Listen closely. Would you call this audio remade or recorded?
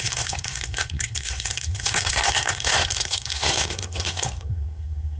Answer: remade